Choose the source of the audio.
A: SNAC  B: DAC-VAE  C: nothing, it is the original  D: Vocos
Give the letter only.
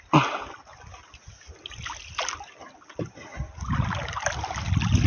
C